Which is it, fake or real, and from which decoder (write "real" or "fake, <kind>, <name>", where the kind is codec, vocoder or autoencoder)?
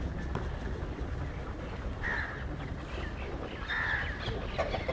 real